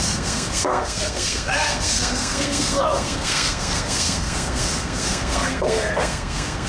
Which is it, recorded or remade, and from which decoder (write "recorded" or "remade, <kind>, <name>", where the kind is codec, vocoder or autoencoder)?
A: remade, codec, SNAC